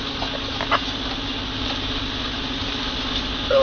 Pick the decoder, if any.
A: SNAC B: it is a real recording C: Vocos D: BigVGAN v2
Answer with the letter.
B